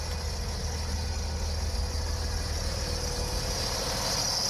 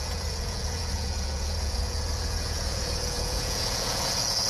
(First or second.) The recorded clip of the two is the first